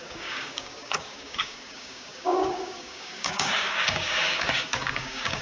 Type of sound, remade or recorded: remade